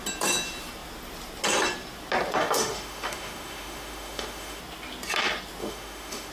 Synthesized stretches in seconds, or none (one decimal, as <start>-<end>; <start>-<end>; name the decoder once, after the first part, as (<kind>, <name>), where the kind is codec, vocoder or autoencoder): 2.4-4.6 (autoencoder, DAC-VAE); 5.6-6.3